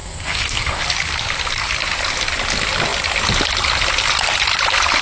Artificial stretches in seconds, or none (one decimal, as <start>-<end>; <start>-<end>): 0.0-0.8